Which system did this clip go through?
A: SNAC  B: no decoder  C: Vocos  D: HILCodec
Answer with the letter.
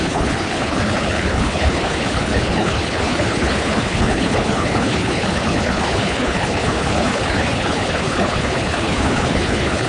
D